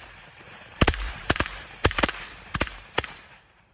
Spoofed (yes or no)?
yes